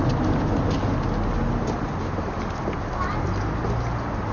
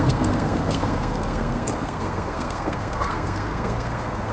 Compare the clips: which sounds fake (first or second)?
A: second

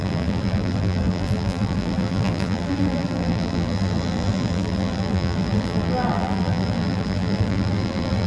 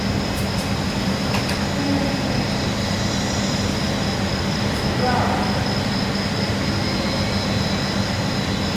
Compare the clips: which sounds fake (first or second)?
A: first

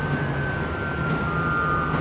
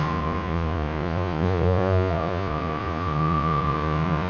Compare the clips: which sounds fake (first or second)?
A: second